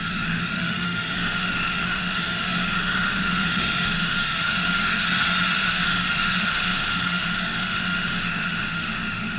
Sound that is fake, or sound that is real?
fake